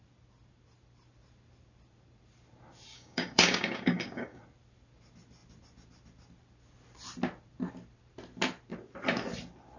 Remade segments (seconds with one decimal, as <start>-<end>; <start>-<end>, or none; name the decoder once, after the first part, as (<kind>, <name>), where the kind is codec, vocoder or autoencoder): 2.9-4.4 (codec, DAC)

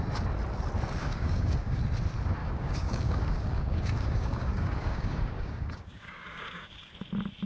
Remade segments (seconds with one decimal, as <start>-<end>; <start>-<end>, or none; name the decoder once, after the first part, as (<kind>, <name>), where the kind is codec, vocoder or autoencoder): 1.0-1.8 (codec, DAC); 2.4-6.9

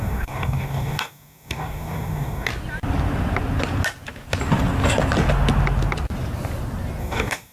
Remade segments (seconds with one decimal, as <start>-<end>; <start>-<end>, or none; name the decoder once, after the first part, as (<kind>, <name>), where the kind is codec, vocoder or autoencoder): 0.0-2.5 (codec, DAC); 7.0-7.5

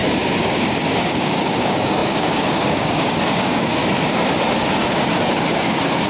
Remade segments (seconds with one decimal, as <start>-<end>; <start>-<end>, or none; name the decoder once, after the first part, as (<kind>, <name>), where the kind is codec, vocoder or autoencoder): 0.0-3.8 (codec, DAC); 4.8-6.1